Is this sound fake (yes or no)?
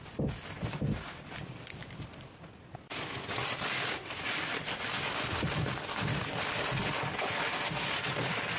no